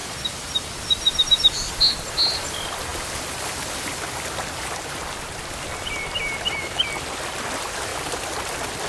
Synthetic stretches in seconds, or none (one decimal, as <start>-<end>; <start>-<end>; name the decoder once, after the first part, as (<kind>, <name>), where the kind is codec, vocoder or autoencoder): 0.0-2.1 (vocoder, BigVGAN v2); 2.9-4.3; 7.9-8.9